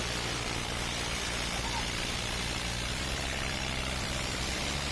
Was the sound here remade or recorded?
remade